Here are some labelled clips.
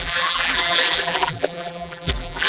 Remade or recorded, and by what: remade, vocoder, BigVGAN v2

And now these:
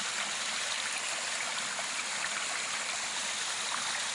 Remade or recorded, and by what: recorded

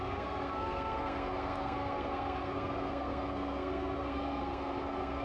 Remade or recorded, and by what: remade, codec, SNAC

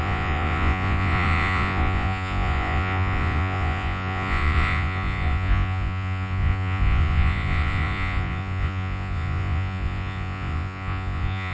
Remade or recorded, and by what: remade, vocoder, Vocos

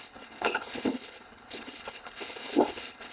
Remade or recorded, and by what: remade, codec, HILCodec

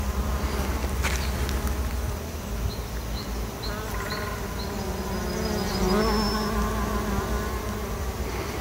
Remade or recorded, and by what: recorded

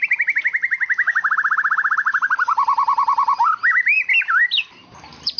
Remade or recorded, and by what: recorded